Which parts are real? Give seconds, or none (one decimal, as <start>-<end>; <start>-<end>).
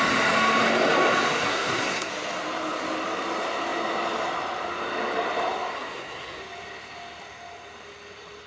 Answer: 0.0-1.5; 2.1-5.7; 6.4-8.5